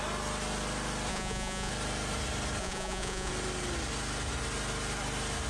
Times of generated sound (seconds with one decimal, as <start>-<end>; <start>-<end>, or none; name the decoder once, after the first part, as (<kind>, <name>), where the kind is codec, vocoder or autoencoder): 1.1-1.7 (vocoder, Vocos); 2.6-3.3